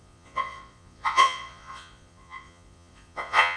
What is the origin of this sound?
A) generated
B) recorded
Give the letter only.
A